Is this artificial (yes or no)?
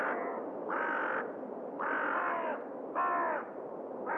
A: no